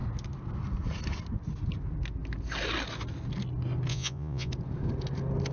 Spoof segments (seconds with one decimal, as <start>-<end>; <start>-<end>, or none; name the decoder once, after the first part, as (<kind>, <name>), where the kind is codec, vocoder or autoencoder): 3.9-4.5 (vocoder, Vocos)